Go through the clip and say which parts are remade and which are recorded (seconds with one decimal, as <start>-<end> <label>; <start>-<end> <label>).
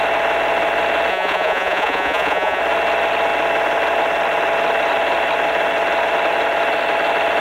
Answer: 0.0-1.1 recorded; 1.1-2.6 remade; 2.6-7.4 recorded